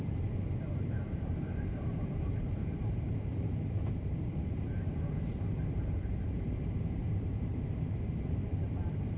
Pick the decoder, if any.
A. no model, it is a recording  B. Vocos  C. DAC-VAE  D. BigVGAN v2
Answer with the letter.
D